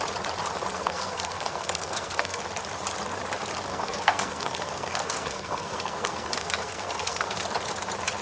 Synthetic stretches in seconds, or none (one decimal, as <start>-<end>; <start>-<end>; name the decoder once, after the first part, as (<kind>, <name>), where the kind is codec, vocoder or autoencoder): 0.7-2.4 (codec, SNAC); 3.7-7.4

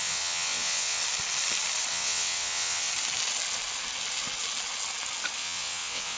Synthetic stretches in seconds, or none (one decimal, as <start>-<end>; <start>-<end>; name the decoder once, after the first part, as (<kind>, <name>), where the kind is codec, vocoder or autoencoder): 0.0-1.0 (vocoder, WaveNeXt); 1.9-2.9; 5.4-6.2

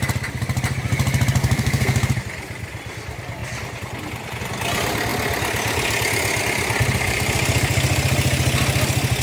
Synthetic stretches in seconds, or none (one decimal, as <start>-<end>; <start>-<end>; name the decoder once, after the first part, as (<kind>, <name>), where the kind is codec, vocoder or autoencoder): 1.4-2.1 (codec, SNAC)

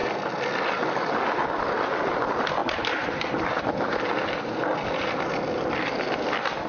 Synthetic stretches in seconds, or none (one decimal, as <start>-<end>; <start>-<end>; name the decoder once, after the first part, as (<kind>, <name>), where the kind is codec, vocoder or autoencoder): none

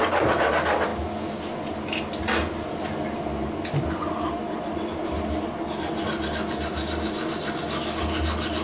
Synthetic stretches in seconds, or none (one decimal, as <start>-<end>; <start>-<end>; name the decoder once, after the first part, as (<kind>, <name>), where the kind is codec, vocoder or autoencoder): none